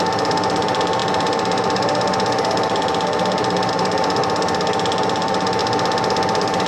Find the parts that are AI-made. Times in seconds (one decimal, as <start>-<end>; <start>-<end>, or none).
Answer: 0.0-4.2; 5.0-5.6